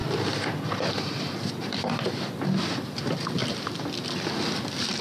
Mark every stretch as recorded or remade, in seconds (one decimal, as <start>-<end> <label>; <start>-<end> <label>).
0.0-3.0 remade; 3.0-3.4 recorded; 3.4-5.0 remade